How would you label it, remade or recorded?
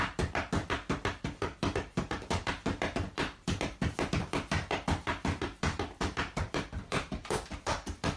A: remade